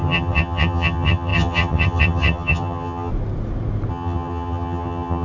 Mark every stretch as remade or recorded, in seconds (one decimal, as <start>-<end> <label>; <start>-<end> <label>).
0.0-3.1 remade; 3.1-3.9 recorded; 3.9-5.2 remade